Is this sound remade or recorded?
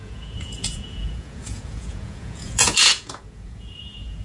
remade